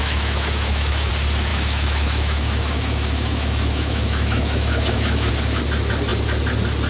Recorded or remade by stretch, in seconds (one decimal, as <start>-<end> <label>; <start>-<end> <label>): 0.0-1.1 remade; 1.1-1.5 recorded; 1.5-5.3 remade; 5.3-6.9 recorded

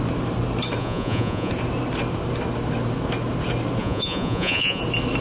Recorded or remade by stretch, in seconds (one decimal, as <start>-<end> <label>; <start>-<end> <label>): 0.0-0.8 recorded; 0.8-1.5 remade; 1.5-3.8 recorded; 3.8-4.8 remade; 4.8-5.2 recorded